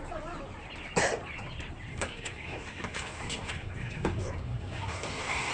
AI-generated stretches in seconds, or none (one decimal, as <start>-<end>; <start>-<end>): 1.9-5.5